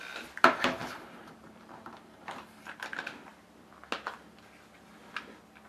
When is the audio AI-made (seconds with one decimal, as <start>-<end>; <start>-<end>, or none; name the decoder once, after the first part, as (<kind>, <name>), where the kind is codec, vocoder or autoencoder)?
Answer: 0.8-2.8 (vocoder, BigVGAN v2)